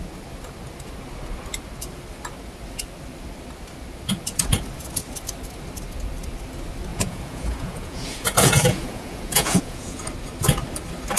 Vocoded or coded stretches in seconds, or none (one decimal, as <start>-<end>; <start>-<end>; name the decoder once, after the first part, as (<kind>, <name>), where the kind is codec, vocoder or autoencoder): 6.9-10.0 (vocoder, Vocos)